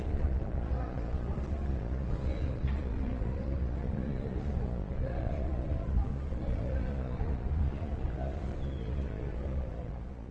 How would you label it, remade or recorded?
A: remade